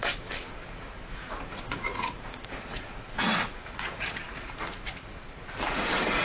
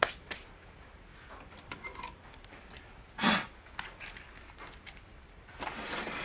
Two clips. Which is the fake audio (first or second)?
first